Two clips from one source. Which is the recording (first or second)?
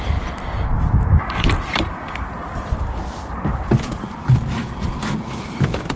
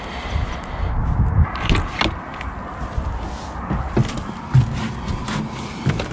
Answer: second